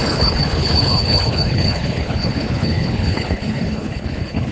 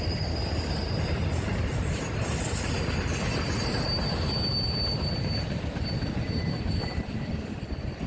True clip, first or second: second